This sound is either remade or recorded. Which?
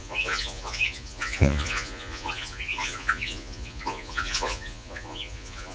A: remade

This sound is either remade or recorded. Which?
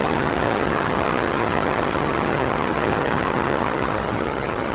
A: remade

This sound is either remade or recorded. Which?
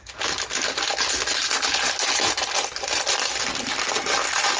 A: recorded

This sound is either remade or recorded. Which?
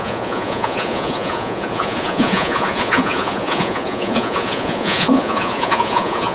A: remade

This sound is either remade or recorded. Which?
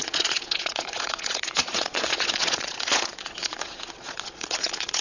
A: remade